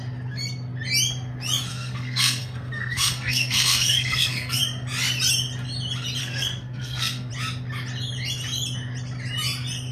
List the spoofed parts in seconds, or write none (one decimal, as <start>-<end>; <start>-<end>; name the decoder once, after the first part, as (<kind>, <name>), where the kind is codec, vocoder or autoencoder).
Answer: 1.7-4.6 (codec, SNAC); 6.2-7.3